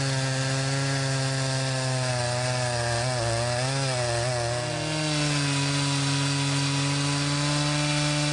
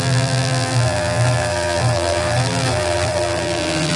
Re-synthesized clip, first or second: second